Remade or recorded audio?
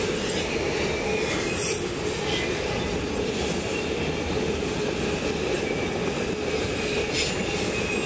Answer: recorded